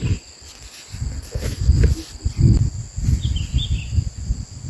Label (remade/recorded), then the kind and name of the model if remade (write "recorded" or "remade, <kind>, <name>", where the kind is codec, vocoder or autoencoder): recorded